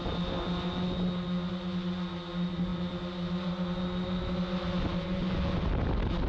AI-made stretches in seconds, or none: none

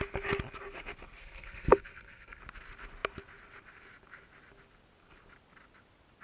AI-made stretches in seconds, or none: 1.2-2.4

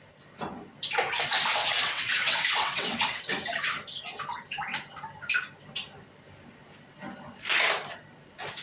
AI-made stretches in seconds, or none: 1.6-3.2

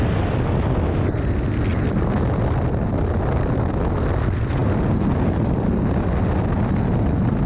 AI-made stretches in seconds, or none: none

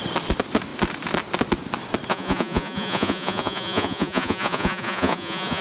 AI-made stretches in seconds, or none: 2.1-5.6

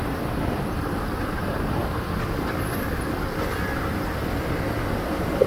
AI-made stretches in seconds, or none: 0.0-1.8; 5.1-5.5

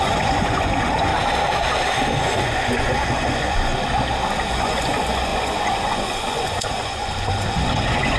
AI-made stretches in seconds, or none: 0.0-1.1; 2.2-3.7; 4.5-8.2

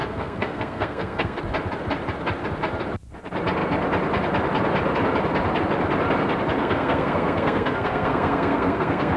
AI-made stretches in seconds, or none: 0.0-1.4; 6.6-9.2